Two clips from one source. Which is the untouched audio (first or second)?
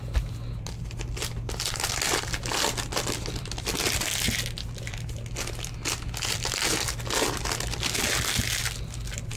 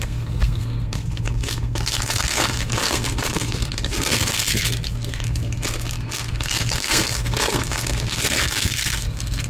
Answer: first